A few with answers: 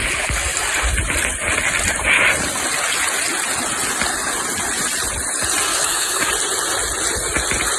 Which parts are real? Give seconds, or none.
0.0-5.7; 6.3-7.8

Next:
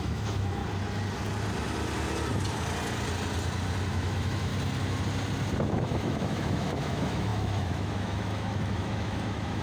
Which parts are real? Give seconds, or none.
0.6-3.9; 4.5-5.7

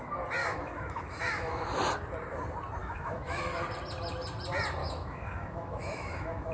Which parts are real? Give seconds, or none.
0.0-0.4; 1.7-2.8; 3.4-4.8

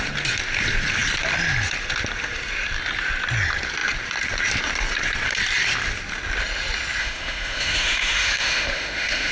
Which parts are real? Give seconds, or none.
0.0-7.0

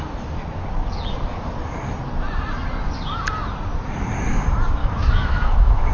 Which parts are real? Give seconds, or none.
0.0-4.8

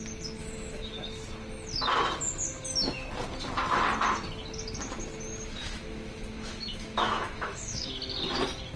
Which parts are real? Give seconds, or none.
0.0-0.4; 0.9-5.6; 7.9-8.8